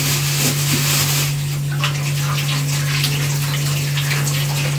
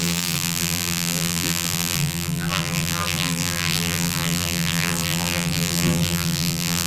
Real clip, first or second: first